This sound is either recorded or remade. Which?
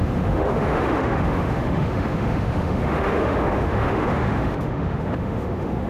remade